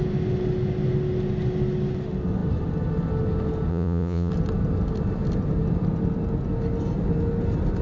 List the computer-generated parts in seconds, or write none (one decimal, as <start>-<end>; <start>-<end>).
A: 3.7-4.3

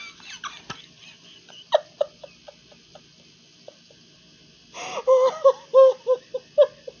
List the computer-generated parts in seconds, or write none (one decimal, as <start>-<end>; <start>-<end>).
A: none

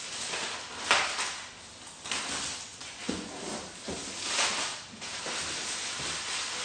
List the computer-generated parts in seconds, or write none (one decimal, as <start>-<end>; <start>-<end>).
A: 2.7-3.3

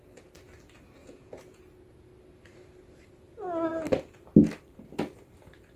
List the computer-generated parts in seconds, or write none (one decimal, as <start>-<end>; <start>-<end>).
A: 1.0-1.6

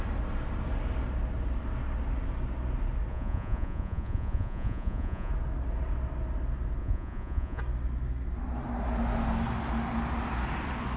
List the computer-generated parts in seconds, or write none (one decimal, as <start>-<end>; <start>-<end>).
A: 3.1-5.3; 6.8-7.6